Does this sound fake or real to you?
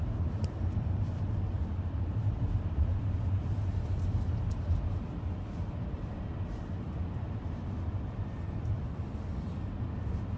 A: fake